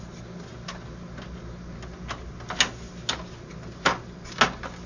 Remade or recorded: recorded